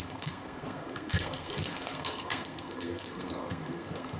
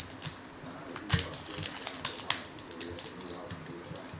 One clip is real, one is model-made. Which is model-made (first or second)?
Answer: first